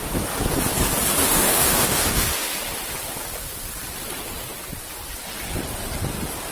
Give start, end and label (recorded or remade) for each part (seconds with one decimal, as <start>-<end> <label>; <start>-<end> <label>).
0.0-1.2 recorded; 1.2-2.5 remade; 2.5-6.5 recorded